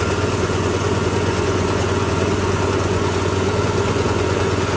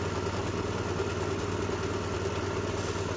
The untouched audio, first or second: second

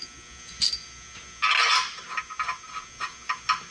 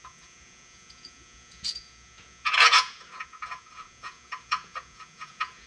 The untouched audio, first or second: first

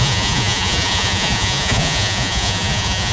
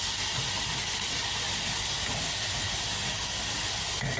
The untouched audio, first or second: second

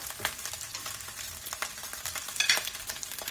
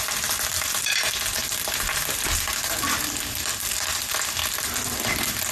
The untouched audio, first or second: second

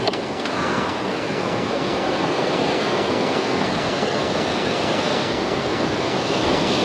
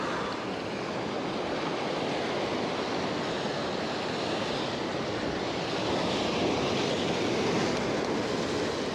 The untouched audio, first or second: second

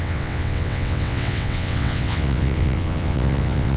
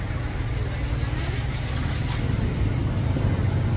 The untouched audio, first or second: second